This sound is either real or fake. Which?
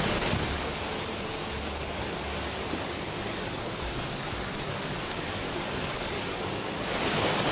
fake